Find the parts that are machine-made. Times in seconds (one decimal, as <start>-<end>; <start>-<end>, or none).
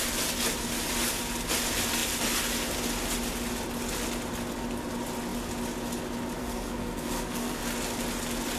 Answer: 6.4-7.6